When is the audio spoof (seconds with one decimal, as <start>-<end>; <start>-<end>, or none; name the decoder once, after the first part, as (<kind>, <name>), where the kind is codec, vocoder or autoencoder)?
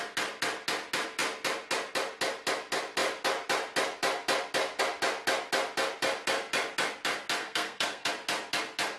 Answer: 7.4-8.1 (codec, SNAC)